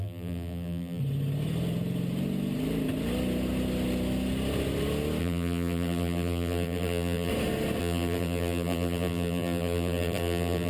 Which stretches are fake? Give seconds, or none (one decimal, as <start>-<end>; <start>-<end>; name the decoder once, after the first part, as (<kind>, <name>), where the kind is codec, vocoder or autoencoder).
0.0-1.0 (vocoder, BigVGAN v2); 5.2-7.3; 7.8-10.7